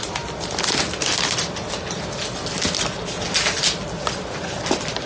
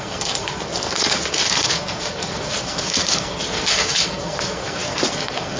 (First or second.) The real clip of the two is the first